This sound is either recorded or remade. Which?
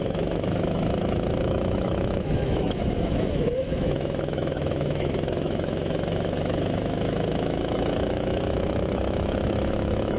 remade